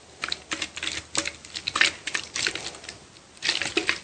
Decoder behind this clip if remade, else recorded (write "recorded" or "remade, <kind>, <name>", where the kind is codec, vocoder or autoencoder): recorded